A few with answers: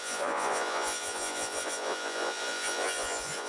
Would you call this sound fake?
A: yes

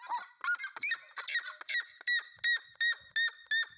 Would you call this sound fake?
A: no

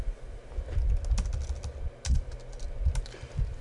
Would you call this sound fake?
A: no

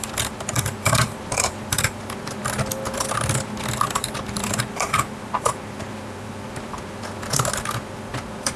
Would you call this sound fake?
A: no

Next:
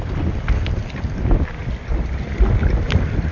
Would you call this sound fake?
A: no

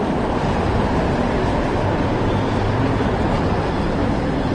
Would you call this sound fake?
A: no